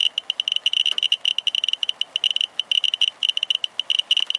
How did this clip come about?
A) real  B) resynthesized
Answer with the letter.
A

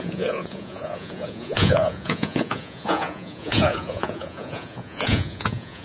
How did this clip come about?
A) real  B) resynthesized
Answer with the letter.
B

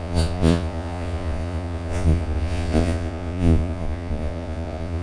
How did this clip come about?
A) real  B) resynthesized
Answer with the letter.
B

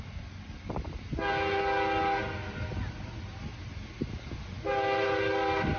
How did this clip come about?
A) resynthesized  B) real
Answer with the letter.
B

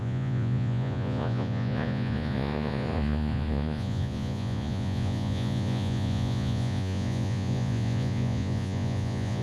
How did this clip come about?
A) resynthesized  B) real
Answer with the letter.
A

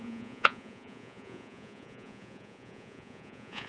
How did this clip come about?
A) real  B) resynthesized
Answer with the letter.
B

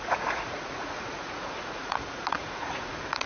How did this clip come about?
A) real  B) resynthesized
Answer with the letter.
B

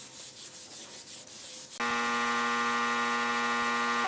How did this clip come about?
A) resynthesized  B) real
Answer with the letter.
B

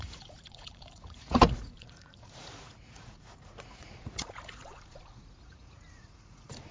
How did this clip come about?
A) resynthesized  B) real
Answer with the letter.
A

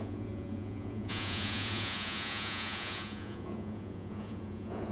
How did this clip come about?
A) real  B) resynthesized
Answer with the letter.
B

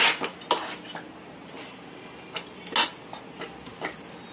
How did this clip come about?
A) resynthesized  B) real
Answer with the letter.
B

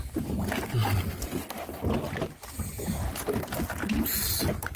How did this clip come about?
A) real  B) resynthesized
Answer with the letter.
A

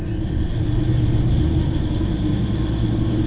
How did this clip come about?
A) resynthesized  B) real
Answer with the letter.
B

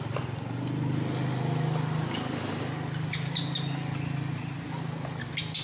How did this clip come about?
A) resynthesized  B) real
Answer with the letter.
B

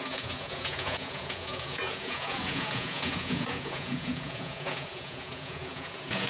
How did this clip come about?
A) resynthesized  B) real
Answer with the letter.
A